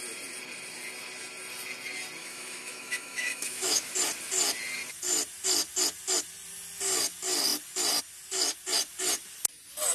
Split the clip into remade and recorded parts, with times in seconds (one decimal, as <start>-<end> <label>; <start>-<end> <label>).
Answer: 0.0-2.2 recorded; 2.2-3.9 remade; 3.9-9.9 recorded